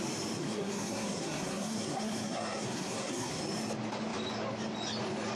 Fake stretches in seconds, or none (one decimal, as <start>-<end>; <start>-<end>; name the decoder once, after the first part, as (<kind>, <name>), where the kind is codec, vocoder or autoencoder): 0.4-3.4 (codec, SNAC)